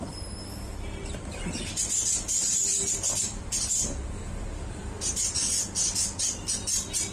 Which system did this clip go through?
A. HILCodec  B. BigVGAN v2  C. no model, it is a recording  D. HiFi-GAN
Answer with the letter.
B